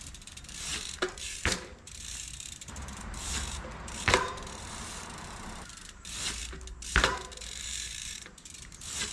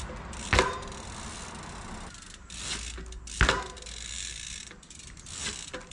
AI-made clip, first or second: first